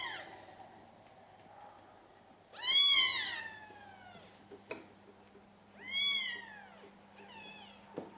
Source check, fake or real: real